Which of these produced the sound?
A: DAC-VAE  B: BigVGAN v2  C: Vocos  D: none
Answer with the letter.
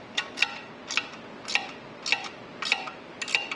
D